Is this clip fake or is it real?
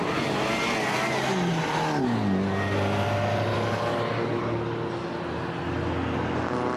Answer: real